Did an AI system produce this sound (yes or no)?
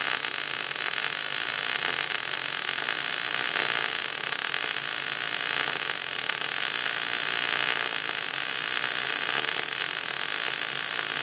no